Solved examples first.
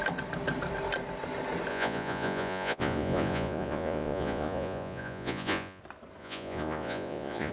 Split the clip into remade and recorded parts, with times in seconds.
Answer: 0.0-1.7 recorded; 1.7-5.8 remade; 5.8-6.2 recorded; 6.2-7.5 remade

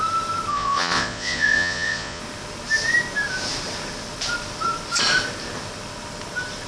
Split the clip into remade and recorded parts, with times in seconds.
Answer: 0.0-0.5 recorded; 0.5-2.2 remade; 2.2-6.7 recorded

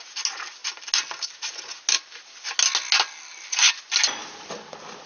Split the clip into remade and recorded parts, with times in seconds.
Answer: 0.0-5.1 recorded